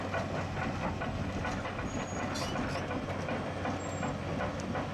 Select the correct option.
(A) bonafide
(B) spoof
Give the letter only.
A